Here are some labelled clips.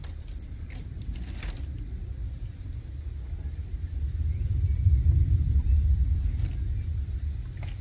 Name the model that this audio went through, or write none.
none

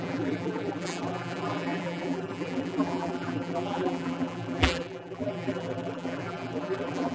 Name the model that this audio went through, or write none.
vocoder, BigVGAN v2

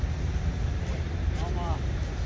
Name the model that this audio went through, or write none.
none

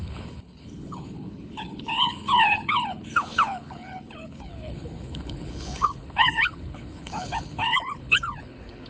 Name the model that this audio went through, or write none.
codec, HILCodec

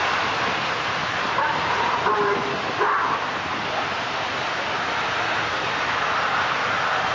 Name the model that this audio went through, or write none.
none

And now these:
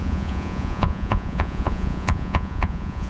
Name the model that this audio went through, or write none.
vocoder, Vocos